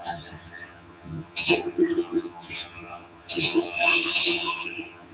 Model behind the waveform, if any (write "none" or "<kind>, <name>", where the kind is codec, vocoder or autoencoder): vocoder, HiFi-GAN